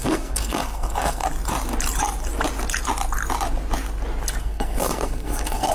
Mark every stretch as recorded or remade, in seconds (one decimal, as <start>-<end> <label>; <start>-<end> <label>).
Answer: 0.0-1.2 remade; 1.2-4.4 recorded; 4.4-5.7 remade